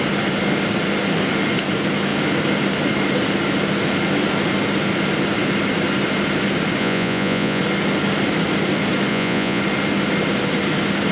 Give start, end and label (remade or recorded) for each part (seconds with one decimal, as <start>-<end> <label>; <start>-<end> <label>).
0.0-6.8 recorded; 6.8-7.6 remade; 7.6-9.1 recorded; 9.1-9.6 remade; 9.6-11.1 recorded